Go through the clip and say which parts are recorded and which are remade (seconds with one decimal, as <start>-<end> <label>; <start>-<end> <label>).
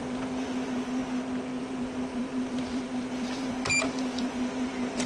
0.0-1.0 remade; 1.0-1.6 recorded; 1.6-5.1 remade